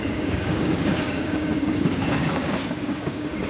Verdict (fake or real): fake